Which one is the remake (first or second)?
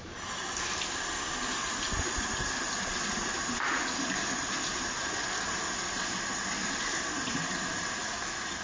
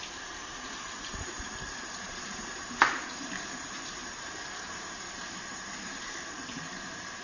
second